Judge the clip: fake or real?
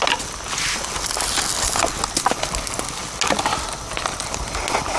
real